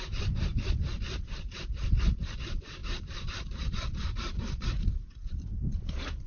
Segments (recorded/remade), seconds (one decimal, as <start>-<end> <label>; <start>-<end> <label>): 0.0-6.3 remade